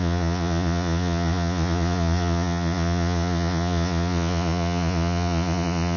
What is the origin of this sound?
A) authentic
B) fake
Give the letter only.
B